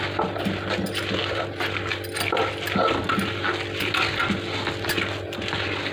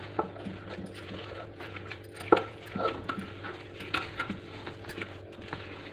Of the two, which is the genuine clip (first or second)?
first